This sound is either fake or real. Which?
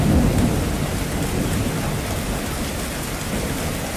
real